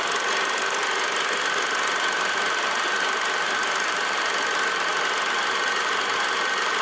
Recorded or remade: recorded